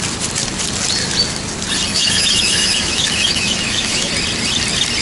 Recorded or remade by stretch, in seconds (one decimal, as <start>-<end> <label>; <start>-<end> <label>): 0.0-1.9 recorded; 1.9-4.1 remade; 4.1-5.0 recorded